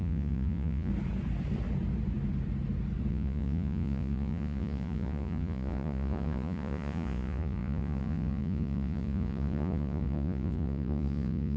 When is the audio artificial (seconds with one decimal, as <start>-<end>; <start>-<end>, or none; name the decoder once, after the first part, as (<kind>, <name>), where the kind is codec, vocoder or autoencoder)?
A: 0.0-0.9 (vocoder, Vocos); 3.1-11.6